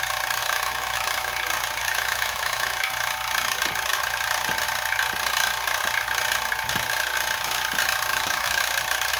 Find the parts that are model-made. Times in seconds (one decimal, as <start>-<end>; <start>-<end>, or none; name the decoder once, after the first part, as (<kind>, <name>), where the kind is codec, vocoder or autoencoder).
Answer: 0.4-1.3 (autoencoder, DAC-VAE); 1.8-2.9; 8.1-8.6